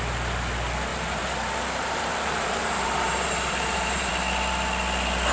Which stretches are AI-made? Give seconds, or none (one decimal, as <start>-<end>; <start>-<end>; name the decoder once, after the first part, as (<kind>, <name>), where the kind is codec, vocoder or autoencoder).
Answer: 0.9-4.1 (vocoder, BigVGAN v2)